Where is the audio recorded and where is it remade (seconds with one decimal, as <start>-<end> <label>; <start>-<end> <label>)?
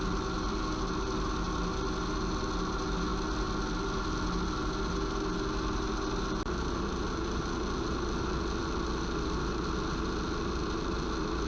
0.0-11.5 recorded